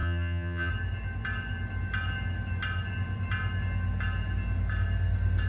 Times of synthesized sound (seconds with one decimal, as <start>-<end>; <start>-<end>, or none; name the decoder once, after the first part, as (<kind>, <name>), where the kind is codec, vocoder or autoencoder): 0.0-0.7 (vocoder, HiFi-GAN)